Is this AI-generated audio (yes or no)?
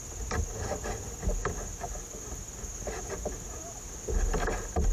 no